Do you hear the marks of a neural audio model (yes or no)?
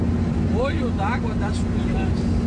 no